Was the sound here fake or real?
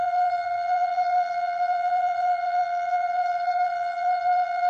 fake